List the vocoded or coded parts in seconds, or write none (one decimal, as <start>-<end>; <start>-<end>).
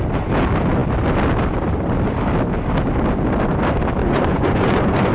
4.0-5.1